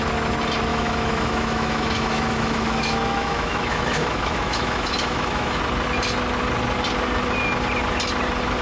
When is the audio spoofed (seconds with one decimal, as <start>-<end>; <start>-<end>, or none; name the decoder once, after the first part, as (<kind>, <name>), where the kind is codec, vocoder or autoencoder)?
0.7-5.6 (autoencoder, DAC-VAE)